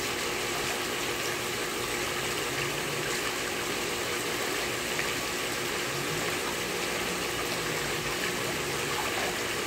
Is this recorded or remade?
recorded